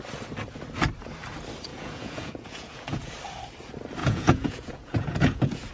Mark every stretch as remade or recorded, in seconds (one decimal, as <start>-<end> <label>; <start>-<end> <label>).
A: 0.0-1.7 recorded; 1.7-3.1 remade; 3.1-4.0 recorded; 4.0-5.7 remade